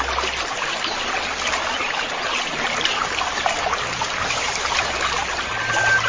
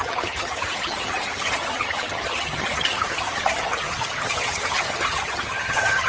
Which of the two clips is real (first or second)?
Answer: first